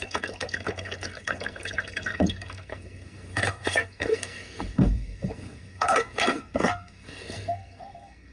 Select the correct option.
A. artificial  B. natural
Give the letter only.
A